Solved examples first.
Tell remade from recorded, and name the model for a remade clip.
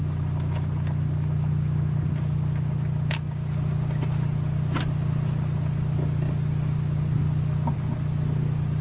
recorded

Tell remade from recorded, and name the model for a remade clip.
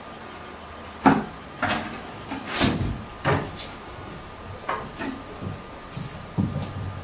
recorded